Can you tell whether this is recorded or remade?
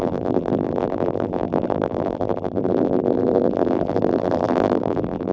remade